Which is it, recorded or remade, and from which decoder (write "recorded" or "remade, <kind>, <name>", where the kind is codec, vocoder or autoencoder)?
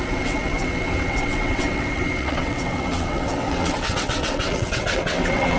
remade, vocoder, WaveNeXt